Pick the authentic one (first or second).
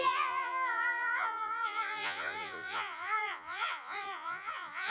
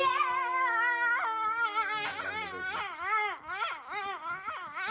second